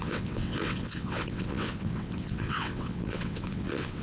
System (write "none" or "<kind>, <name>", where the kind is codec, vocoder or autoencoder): vocoder, WaveNeXt